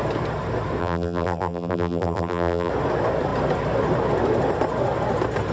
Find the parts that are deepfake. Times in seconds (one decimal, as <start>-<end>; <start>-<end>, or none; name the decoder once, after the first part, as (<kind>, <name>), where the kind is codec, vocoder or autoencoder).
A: 0.8-2.7 (vocoder, BigVGAN v2)